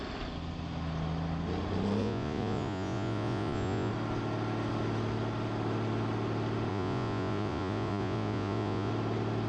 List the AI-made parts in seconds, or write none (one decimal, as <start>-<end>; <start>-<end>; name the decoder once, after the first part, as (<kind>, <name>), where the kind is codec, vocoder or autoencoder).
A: 2.0-3.9 (vocoder, Vocos); 6.7-8.9